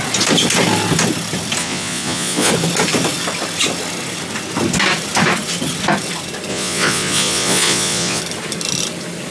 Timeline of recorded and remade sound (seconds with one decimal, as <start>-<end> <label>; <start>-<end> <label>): 0.0-1.6 recorded; 1.6-2.5 remade; 2.5-6.5 recorded; 6.5-8.2 remade; 8.2-9.3 recorded